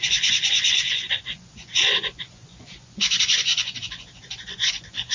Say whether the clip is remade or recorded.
remade